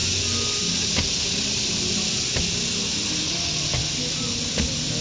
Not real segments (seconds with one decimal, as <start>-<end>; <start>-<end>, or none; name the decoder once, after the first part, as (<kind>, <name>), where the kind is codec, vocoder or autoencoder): none